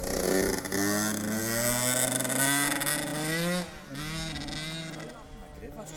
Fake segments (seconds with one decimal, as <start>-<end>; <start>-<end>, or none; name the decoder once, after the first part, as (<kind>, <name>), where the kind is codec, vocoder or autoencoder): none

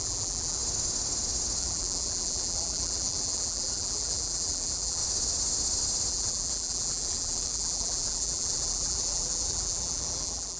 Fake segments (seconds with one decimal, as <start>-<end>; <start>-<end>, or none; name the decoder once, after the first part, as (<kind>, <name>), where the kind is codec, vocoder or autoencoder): 0.0-0.6 (vocoder, BigVGAN v2); 1.6-5.0; 6.1-10.6

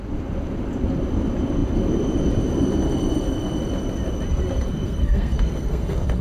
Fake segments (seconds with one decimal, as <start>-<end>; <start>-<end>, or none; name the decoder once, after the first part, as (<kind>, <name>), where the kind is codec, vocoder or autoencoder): 4.3-6.2 (codec, SNAC)

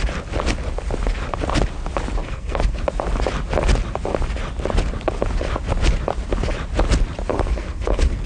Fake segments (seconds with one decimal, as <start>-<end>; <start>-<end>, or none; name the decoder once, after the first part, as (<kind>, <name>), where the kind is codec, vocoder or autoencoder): 2.2-2.8 (codec, SNAC); 7.3-8.3

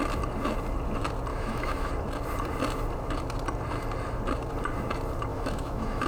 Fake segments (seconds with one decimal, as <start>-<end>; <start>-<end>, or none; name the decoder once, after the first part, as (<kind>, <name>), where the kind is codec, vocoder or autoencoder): 1.3-1.9 (autoencoder, DAC-VAE); 5.3-6.1

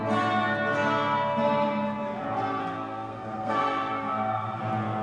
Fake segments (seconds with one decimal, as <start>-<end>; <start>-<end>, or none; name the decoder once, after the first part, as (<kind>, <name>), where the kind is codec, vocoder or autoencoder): 2.6-4.6 (codec, SNAC)

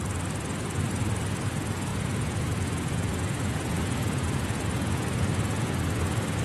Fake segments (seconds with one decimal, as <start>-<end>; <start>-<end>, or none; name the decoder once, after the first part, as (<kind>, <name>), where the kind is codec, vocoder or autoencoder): 1.9-5.7 (vocoder, Vocos)